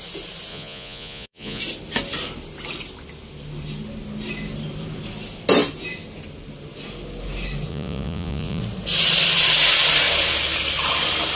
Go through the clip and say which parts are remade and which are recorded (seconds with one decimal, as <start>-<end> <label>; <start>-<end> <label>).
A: 0.0-0.5 recorded; 0.5-1.6 remade; 1.6-7.7 recorded; 7.7-8.6 remade; 8.6-11.4 recorded